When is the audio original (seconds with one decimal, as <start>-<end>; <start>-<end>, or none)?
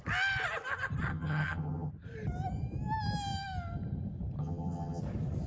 0.0-1.1; 1.9-4.4; 5.0-5.5